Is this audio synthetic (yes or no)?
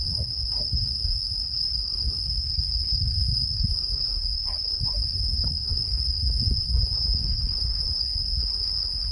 yes